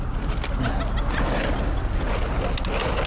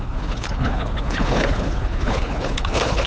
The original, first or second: first